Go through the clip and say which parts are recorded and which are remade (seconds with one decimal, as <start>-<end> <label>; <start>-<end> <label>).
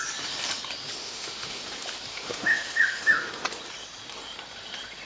0.0-1.0 recorded; 1.0-1.6 remade; 1.6-2.1 recorded; 2.1-3.3 remade; 3.3-5.1 recorded